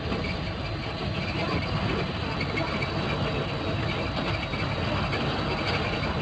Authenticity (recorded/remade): recorded